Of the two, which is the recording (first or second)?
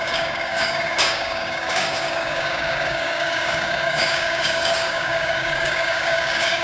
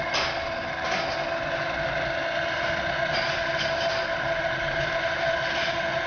second